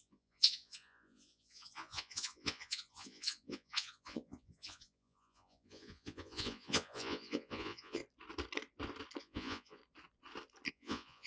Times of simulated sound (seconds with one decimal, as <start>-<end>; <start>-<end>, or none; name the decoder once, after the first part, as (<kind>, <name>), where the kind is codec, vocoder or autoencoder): 0.0-8.0 (vocoder, Vocos); 9.2-9.8; 10.7-11.3